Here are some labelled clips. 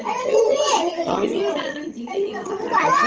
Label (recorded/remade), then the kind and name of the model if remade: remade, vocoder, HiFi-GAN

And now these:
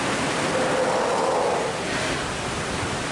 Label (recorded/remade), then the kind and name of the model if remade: recorded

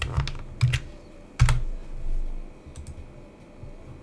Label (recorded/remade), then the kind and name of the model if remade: recorded